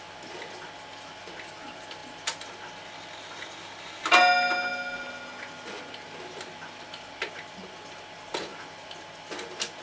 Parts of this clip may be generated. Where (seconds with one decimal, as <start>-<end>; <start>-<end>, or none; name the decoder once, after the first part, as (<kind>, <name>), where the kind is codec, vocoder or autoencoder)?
none